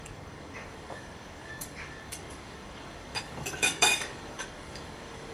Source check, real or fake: fake